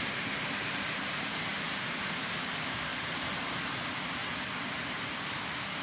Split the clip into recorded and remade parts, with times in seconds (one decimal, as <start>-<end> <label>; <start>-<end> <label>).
0.0-2.9 remade; 2.9-3.6 recorded; 3.6-4.2 remade; 4.2-5.0 recorded; 5.0-5.8 remade